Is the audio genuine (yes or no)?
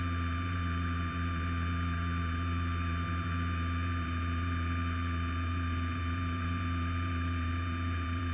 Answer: no